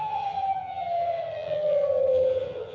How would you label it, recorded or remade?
remade